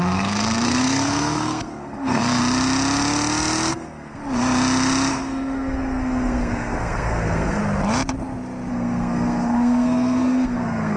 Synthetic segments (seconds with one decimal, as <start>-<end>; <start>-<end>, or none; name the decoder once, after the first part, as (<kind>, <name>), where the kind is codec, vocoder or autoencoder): 0.0-2.4 (codec, SNAC); 3.7-4.2; 5.1-7.6; 8.7-11.0